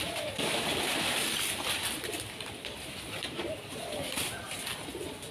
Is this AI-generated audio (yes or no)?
no